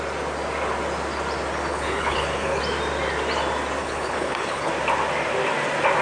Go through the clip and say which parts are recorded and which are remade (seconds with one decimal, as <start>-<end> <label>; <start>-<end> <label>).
0.0-1.7 recorded; 1.7-2.6 remade; 2.6-3.8 recorded; 3.8-4.7 remade; 4.7-6.0 recorded